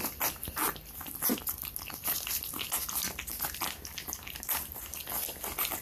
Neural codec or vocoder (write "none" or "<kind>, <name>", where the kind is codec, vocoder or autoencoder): none